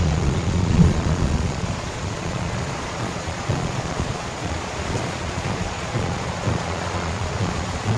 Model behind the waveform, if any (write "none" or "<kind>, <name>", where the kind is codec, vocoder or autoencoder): vocoder, Vocos